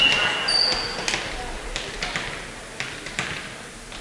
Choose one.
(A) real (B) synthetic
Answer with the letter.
A